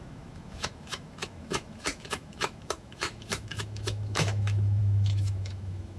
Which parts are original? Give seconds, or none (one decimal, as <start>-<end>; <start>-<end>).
none